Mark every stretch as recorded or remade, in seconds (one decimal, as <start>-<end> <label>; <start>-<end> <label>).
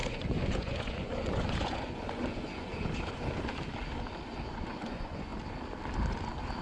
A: 0.0-2.7 remade; 2.7-4.5 recorded; 4.5-5.3 remade; 5.3-6.6 recorded